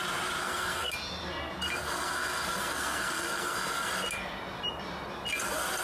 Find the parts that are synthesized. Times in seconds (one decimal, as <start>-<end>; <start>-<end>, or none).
0.4-0.9; 1.8-3.9